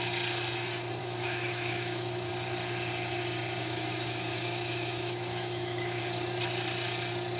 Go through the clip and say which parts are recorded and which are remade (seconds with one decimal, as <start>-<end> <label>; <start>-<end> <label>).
0.0-1.0 recorded; 1.0-2.3 remade; 2.3-3.6 recorded; 3.6-6.0 remade; 6.0-7.4 recorded